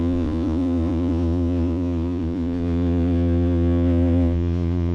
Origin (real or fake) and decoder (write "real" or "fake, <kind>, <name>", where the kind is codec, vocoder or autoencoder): fake, vocoder, Vocos